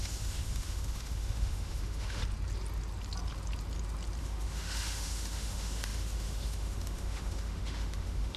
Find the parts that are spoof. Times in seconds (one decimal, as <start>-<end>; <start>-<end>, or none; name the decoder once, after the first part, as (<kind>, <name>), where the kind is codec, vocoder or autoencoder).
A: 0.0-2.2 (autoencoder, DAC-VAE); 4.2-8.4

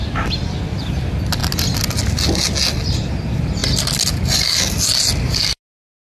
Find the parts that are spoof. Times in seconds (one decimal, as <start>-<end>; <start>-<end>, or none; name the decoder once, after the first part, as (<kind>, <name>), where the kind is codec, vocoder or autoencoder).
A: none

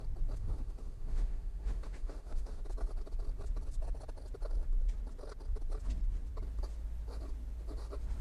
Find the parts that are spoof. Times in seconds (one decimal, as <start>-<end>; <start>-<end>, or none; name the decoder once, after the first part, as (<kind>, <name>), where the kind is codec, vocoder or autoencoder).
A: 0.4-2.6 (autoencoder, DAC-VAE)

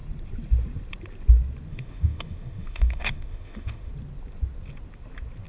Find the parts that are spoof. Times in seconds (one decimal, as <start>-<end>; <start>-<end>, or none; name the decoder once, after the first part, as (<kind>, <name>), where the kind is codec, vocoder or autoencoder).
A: 1.7-3.9 (autoencoder, DAC-VAE)

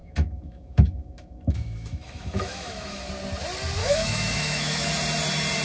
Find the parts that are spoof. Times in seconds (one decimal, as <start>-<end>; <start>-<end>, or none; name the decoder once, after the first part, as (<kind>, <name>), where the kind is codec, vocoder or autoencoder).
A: 0.0-3.1 (autoencoder, DAC-VAE); 3.8-4.9